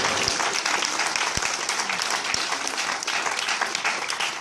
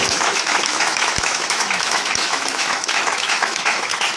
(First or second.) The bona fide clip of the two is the first